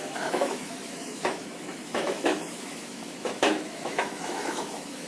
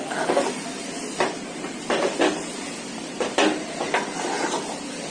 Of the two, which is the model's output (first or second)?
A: first